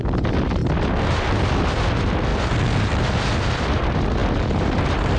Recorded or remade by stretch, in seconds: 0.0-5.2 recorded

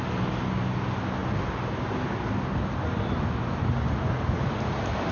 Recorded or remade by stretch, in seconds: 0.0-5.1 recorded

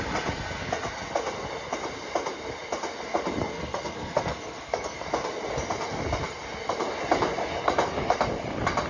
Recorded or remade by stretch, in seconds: 0.0-3.5 recorded; 3.5-5.0 remade; 5.0-8.9 recorded